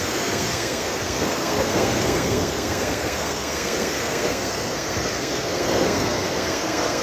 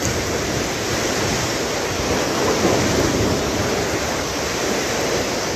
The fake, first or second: first